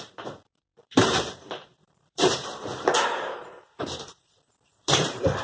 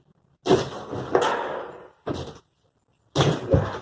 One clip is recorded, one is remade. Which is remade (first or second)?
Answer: first